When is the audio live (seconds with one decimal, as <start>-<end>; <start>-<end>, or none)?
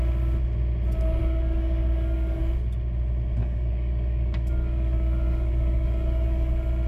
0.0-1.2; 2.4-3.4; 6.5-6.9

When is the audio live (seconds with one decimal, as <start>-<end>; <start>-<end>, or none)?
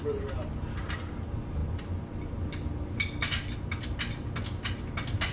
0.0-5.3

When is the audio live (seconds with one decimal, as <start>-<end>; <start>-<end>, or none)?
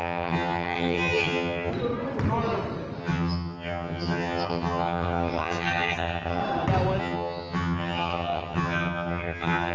1.7-3.0; 6.4-7.0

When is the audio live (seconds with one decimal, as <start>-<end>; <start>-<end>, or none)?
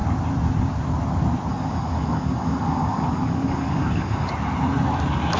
0.0-1.5; 4.3-5.4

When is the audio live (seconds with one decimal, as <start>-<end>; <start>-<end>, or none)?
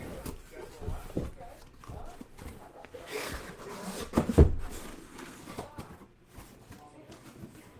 0.0-2.6; 3.4-4.9; 5.4-7.8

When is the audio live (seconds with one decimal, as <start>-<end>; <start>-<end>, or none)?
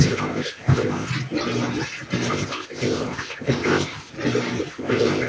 1.1-2.3; 4.1-4.7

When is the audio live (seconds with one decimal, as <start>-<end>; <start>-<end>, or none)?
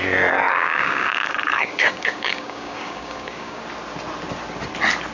0.0-0.5; 3.6-5.1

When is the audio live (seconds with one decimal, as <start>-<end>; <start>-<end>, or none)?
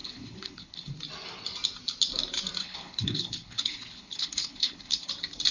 0.9-2.6; 5.1-5.5